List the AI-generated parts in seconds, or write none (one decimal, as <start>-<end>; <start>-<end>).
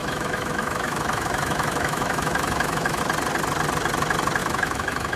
0.0-3.0; 4.4-5.2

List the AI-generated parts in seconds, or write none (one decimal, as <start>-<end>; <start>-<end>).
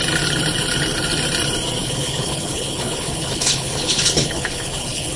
1.8-5.2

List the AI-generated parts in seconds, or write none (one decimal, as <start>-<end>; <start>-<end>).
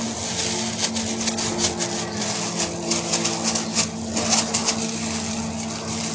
none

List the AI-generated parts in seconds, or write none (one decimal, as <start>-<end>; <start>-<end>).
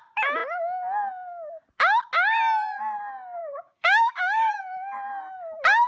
3.4-4.5